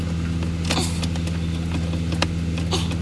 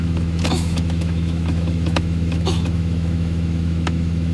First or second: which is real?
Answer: first